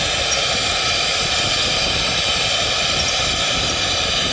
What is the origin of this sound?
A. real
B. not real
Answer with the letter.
A